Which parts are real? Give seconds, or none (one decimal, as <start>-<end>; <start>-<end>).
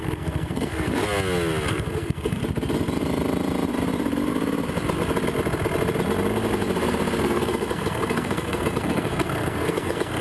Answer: 1.0-1.7; 2.4-7.2